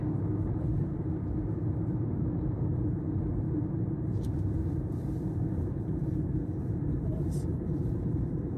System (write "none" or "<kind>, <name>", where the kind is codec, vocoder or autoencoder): vocoder, BigVGAN v2